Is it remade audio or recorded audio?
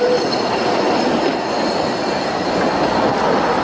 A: recorded